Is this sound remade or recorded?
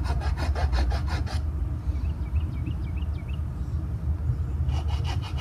recorded